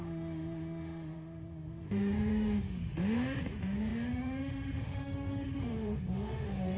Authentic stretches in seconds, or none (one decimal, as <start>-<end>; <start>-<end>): none